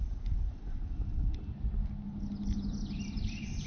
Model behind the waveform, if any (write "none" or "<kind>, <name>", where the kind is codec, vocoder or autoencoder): none